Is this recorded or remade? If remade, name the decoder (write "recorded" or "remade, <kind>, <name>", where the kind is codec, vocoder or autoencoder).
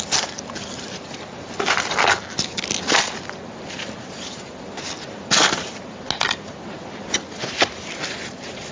recorded